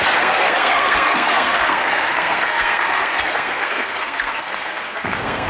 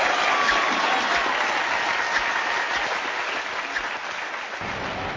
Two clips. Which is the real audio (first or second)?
second